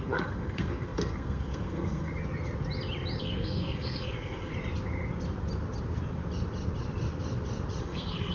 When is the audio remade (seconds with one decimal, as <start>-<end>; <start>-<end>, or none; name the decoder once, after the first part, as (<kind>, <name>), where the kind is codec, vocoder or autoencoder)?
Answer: 0.0-2.1 (codec, SNAC); 3.2-4.5; 7.8-8.3

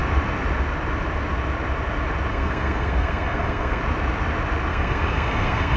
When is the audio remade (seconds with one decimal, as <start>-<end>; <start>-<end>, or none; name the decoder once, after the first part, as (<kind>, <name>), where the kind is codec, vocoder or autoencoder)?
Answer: 2.3-3.8 (codec, SNAC); 4.7-5.8